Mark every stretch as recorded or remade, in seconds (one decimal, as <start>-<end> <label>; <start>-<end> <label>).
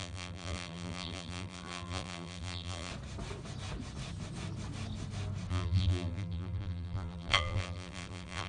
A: 0.0-2.9 remade; 2.9-5.5 recorded; 5.5-8.5 remade